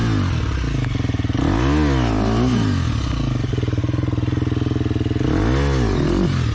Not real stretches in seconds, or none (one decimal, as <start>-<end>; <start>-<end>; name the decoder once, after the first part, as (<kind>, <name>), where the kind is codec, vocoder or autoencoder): none